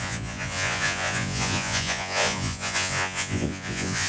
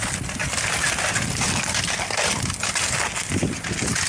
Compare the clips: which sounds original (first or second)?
second